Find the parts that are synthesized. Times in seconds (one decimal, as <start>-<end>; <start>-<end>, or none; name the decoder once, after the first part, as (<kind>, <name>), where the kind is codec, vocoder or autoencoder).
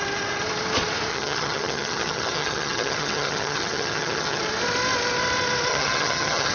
1.1-4.4 (vocoder, HiFi-GAN); 5.7-6.5